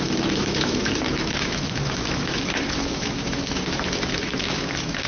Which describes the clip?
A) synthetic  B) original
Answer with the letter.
A